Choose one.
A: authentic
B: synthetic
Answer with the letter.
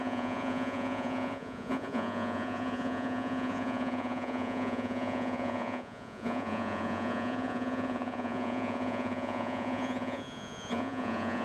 B